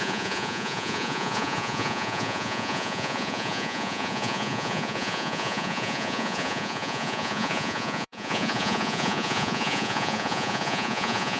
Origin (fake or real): fake